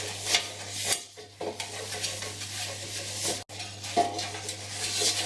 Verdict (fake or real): real